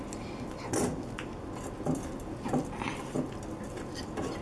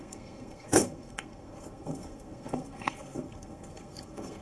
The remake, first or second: second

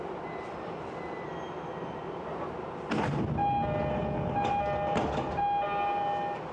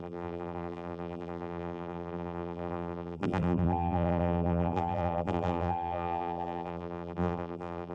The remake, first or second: second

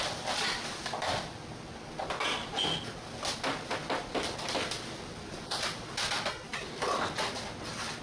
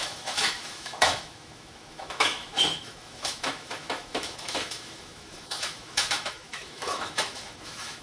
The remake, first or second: second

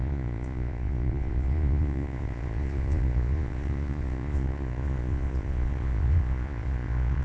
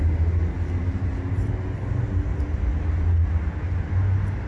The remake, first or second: first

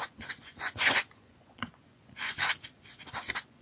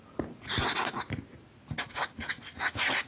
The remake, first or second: first